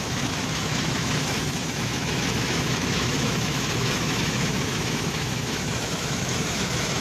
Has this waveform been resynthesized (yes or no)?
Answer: yes